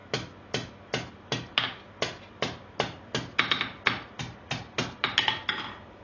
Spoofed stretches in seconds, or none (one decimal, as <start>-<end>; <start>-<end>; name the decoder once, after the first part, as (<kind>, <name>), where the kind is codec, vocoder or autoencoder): none